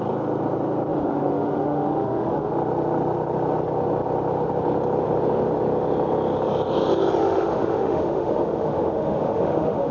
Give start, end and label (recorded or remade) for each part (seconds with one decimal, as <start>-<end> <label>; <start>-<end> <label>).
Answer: 0.0-0.9 recorded; 0.9-2.5 remade; 2.5-7.2 recorded; 7.2-9.9 remade